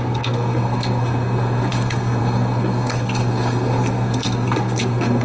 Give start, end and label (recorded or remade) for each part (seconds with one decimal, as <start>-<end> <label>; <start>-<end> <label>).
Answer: 0.0-5.2 remade